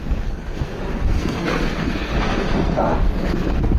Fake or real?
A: fake